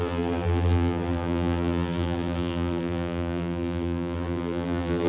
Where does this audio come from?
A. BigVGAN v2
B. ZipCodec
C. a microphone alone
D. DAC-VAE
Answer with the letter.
A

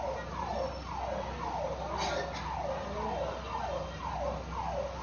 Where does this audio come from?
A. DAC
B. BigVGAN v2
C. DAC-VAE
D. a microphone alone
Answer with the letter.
D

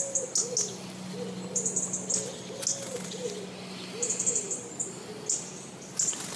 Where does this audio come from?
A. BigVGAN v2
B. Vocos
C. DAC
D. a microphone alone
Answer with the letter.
D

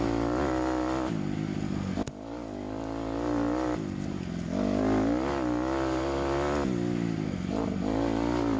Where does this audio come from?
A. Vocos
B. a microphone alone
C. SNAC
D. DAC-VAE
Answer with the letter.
B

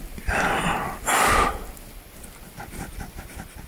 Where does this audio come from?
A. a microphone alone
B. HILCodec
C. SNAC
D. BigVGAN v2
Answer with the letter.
A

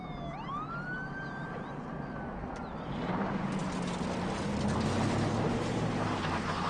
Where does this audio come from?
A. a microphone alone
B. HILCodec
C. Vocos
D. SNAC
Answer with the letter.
A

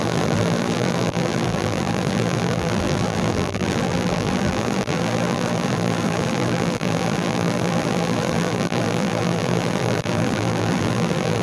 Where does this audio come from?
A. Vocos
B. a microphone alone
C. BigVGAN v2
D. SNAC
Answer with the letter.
C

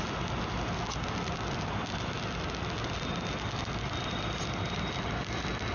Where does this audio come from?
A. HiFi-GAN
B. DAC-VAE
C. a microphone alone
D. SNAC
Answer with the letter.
C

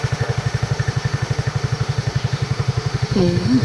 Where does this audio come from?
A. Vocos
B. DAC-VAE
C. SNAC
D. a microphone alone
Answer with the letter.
B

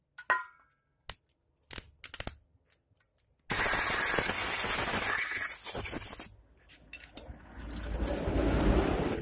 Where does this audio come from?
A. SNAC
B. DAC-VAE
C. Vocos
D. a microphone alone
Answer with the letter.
D